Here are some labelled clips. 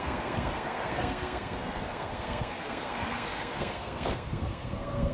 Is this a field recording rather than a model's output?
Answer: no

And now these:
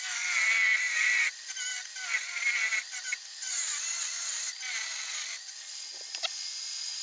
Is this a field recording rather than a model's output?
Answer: no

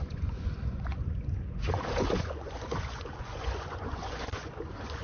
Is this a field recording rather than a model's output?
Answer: no